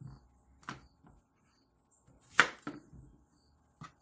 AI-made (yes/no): no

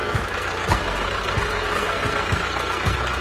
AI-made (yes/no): yes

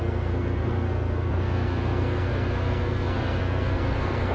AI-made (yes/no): yes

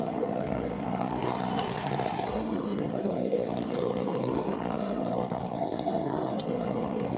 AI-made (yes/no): yes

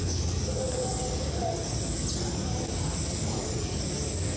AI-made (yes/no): no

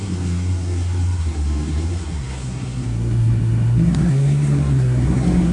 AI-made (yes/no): yes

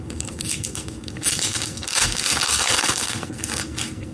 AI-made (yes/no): yes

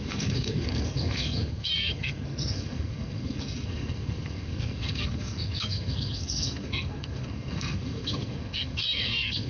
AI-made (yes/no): yes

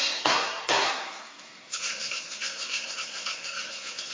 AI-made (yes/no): yes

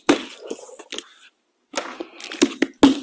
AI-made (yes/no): no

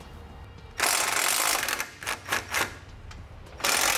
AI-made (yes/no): no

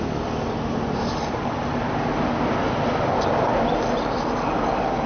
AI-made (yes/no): no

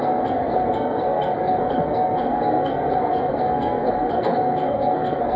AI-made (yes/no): yes